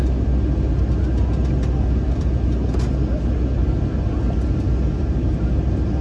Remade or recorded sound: recorded